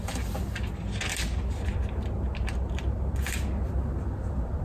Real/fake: real